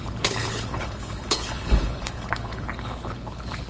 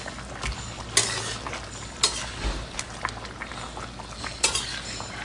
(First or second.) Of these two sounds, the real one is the second